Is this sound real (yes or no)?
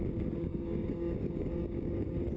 no